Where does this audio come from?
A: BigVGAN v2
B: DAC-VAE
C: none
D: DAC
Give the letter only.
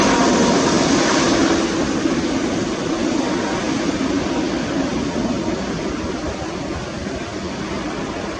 C